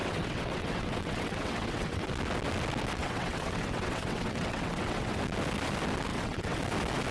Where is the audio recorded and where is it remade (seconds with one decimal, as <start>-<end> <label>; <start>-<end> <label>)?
0.0-2.1 remade; 2.1-3.0 recorded; 3.0-5.2 remade; 5.2-6.1 recorded; 6.1-6.6 remade; 6.6-7.1 recorded